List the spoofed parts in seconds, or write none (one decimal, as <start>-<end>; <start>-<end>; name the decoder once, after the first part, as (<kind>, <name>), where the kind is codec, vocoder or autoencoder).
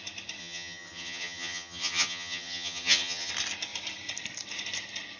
0.4-3.3 (vocoder, HiFi-GAN)